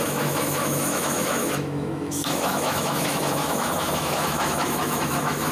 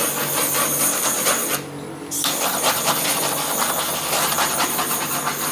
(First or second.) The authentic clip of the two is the second